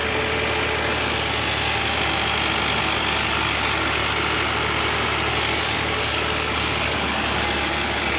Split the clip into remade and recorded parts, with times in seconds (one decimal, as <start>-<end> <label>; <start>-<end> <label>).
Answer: 0.0-2.8 recorded; 2.8-4.0 remade; 4.0-5.3 recorded; 5.3-8.2 remade